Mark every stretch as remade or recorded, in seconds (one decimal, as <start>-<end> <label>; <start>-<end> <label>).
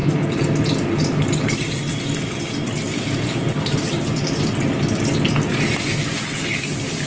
0.0-2.9 recorded; 2.9-3.6 remade; 3.6-7.1 recorded